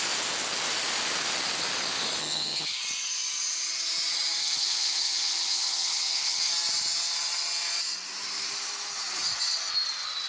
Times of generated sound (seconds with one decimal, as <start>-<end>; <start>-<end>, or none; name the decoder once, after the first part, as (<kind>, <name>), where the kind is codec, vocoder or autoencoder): 2.2-2.8 (vocoder, HiFi-GAN); 4.4-6.5